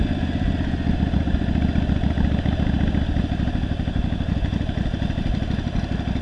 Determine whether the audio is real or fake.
real